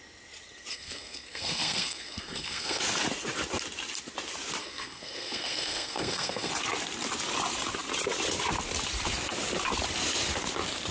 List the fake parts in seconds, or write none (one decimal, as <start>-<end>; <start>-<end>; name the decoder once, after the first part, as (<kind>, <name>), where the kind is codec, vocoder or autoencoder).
0.7-2.8 (codec, SNAC); 4.6-6.5